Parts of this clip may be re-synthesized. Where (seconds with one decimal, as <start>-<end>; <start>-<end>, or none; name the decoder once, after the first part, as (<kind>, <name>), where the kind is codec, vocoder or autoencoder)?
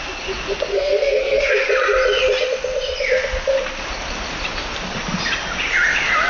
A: 0.7-1.6 (codec, SNAC)